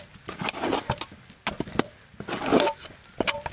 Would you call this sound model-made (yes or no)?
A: no